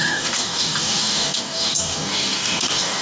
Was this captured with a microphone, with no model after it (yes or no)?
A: no